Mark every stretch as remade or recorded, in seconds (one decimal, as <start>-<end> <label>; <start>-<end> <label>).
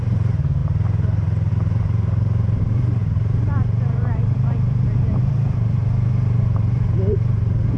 0.0-7.8 remade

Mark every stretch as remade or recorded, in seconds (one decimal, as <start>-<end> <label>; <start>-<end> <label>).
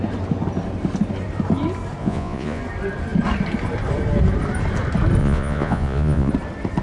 0.0-2.0 recorded; 2.0-2.6 remade; 2.6-5.2 recorded; 5.2-6.3 remade; 6.3-6.8 recorded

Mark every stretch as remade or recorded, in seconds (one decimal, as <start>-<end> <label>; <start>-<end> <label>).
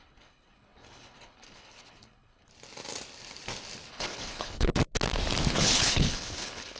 0.0-2.5 remade; 2.5-3.9 recorded; 3.9-4.7 remade; 4.7-5.5 recorded; 5.5-6.8 remade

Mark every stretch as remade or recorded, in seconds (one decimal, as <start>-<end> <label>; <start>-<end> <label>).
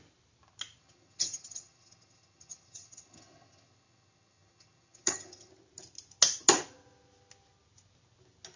0.0-0.8 recorded; 0.8-5.5 remade; 5.5-8.6 recorded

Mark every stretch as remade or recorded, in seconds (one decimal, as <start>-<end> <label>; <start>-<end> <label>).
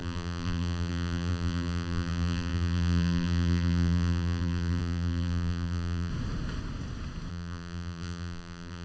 0.0-6.1 remade; 6.1-7.3 recorded; 7.3-8.8 remade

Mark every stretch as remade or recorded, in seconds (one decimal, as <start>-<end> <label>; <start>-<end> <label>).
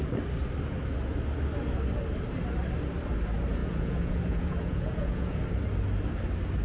0.0-3.6 recorded; 3.6-5.4 remade; 5.4-6.6 recorded